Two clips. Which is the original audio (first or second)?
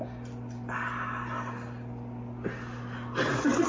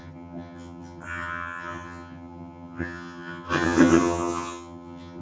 first